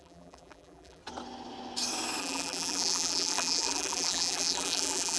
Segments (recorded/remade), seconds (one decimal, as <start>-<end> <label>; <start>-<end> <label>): 0.0-1.0 remade; 1.0-2.2 recorded; 2.2-5.2 remade